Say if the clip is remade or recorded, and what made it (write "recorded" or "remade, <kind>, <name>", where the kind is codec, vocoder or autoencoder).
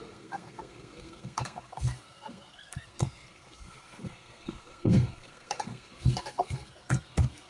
remade, codec, SNAC